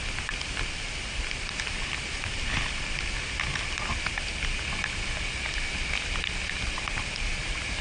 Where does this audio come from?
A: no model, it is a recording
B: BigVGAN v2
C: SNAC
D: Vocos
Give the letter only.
A